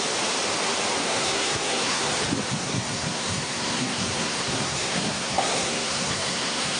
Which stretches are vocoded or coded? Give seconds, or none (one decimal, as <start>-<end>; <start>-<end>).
1.0-2.1; 2.6-6.8